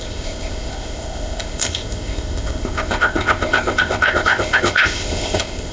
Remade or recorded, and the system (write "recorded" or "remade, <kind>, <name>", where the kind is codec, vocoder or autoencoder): remade, codec, ZipCodec